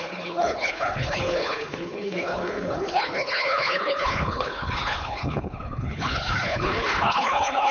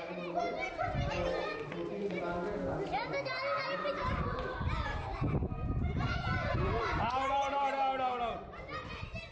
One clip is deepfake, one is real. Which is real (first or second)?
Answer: second